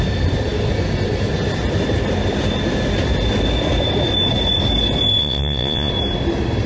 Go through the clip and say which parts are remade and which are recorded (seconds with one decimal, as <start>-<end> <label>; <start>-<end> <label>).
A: 0.0-5.2 recorded; 5.2-5.9 remade; 5.9-6.7 recorded